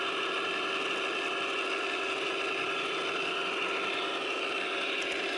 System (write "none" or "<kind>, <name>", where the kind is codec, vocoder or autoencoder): none